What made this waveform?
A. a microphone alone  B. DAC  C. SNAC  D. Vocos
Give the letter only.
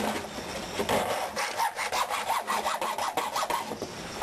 A